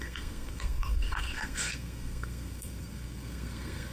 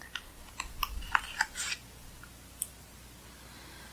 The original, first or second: second